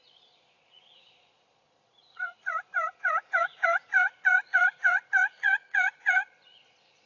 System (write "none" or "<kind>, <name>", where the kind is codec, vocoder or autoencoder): vocoder, Vocos